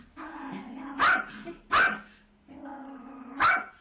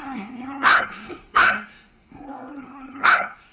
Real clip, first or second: first